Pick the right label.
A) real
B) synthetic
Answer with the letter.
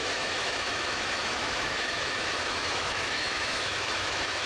B